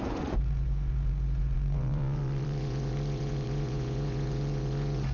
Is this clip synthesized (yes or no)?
yes